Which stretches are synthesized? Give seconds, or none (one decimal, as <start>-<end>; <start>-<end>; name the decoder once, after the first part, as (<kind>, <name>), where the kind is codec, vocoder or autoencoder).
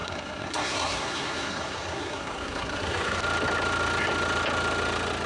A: 0.0-3.2 (codec, SNAC)